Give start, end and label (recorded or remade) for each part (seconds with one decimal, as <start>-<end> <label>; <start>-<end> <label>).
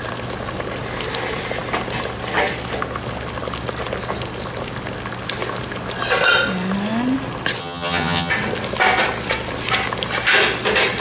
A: 0.0-7.6 recorded; 7.6-8.3 remade; 8.3-11.0 recorded